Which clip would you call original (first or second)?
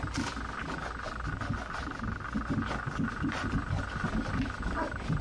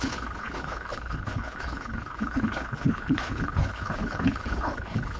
first